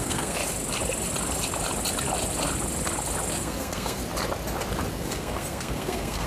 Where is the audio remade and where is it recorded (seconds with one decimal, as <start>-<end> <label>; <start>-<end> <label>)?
0.0-0.4 remade; 0.4-3.3 recorded; 3.3-4.0 remade; 4.0-4.9 recorded; 4.9-6.3 remade